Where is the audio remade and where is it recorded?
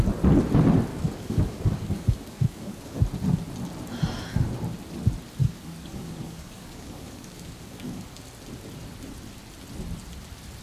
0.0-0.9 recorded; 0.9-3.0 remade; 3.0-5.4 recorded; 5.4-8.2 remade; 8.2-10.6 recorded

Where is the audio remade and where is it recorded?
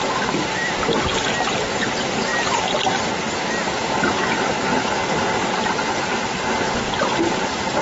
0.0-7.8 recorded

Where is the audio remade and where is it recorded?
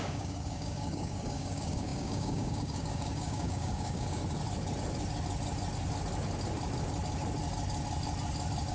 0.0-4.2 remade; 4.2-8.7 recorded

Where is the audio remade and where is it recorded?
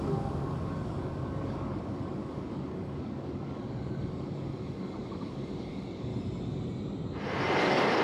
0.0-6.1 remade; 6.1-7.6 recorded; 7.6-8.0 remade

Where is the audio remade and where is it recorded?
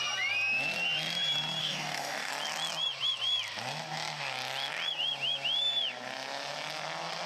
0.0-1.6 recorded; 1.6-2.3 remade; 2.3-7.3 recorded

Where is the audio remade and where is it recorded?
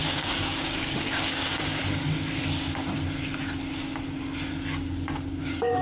0.0-1.8 remade; 1.8-5.3 recorded; 5.3-5.8 remade